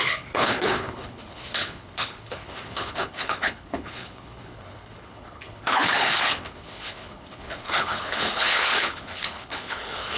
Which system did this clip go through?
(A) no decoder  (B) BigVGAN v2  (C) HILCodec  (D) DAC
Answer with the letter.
C